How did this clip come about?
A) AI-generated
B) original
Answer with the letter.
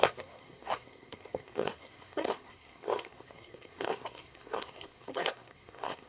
A